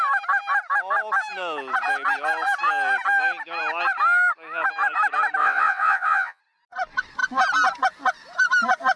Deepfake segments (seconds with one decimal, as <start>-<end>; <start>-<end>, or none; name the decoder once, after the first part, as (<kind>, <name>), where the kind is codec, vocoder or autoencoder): 5.4-6.4 (vocoder, WaveNeXt)